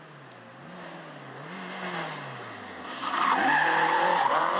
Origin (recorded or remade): recorded